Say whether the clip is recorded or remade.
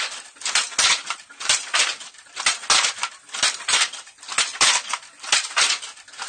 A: recorded